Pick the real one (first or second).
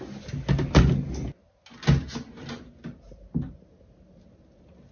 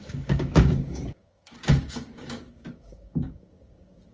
first